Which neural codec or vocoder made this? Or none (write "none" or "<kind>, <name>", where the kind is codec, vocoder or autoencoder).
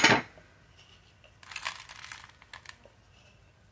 none